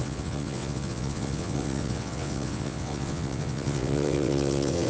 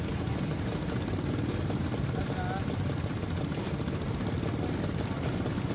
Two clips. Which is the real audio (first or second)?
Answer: second